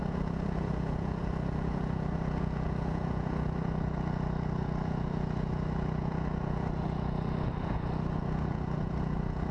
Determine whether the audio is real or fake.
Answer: fake